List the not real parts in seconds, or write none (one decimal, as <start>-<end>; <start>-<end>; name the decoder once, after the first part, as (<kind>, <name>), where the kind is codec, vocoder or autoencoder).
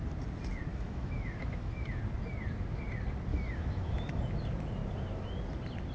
0.7-2.0 (autoencoder, DAC-VAE); 3.3-4.2